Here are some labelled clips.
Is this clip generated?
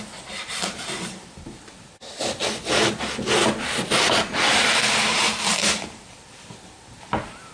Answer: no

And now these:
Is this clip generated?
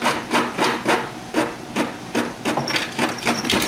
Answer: yes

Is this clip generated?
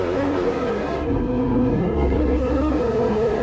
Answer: yes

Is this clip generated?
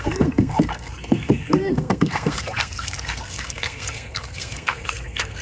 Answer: yes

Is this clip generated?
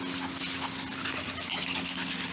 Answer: no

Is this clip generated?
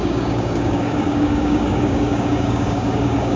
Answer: yes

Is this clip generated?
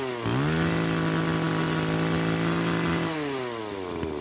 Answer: no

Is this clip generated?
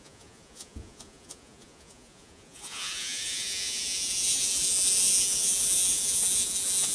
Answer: yes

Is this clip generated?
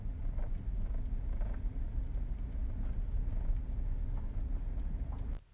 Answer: no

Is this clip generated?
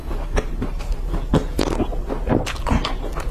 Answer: no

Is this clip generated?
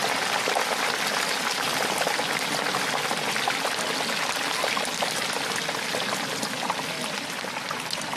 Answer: no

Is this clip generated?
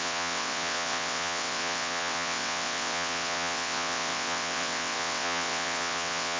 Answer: yes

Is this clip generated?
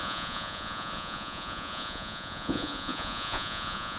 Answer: yes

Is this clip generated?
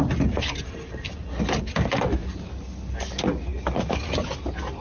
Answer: no